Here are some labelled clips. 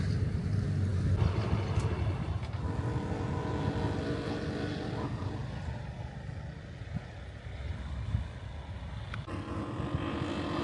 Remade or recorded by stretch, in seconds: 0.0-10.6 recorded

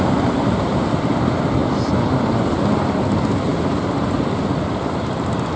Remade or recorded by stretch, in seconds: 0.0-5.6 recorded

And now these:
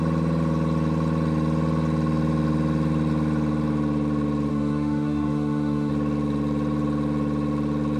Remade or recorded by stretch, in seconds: 0.0-4.5 recorded; 4.5-5.9 remade; 5.9-8.0 recorded

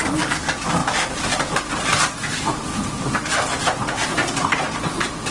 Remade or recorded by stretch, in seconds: 0.0-2.3 recorded; 2.3-3.3 remade; 3.3-5.3 recorded

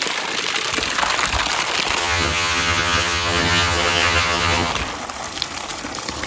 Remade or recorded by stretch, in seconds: 0.0-2.0 recorded; 2.0-4.7 remade; 4.7-6.3 recorded